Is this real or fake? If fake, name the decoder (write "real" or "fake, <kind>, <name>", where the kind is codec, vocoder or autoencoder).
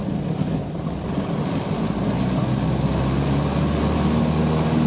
real